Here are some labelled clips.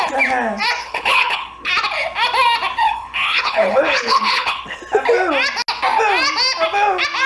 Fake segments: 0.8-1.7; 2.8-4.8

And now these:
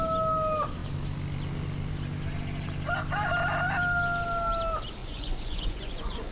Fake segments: 5.0-6.3